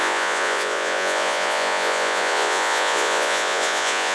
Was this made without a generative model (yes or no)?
no